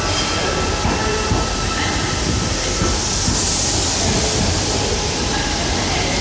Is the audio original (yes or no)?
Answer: yes